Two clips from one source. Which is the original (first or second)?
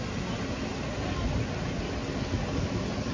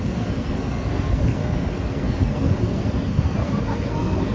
first